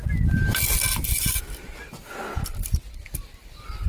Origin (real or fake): real